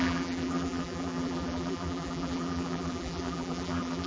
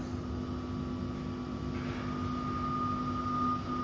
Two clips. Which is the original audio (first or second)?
second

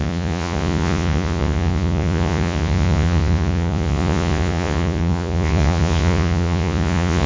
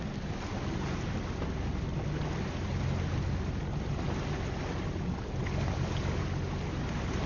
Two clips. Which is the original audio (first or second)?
second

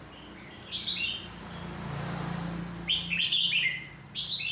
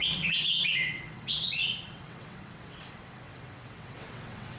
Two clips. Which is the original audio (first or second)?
first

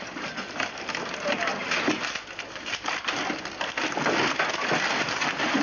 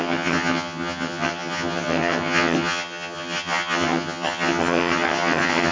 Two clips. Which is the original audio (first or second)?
first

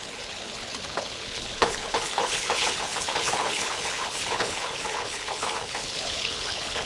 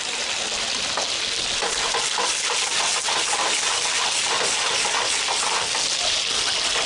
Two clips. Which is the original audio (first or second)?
second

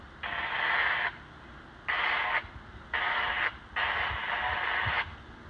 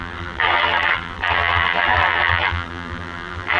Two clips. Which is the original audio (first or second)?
first